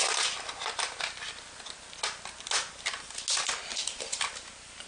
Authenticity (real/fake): real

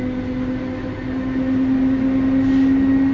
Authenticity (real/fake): real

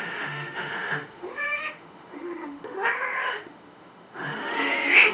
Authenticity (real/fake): fake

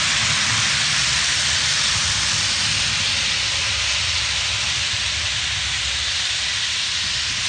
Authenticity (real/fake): real